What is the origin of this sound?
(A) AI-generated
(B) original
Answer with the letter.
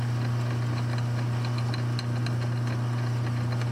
B